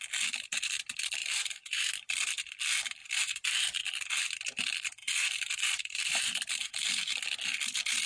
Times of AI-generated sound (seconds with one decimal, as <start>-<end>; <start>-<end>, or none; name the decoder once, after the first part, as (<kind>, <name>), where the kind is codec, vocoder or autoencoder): 1.2-1.9 (vocoder, BigVGAN v2); 3.0-3.8; 5.0-7.2